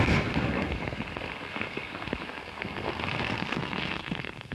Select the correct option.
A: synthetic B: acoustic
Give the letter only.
A